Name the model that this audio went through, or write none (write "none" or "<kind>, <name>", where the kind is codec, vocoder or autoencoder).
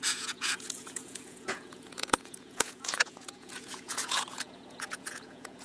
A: vocoder, Vocos